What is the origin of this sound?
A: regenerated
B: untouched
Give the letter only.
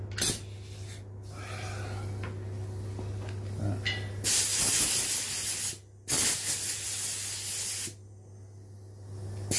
B